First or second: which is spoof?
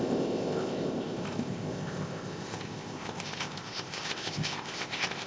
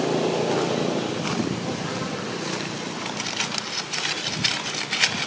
first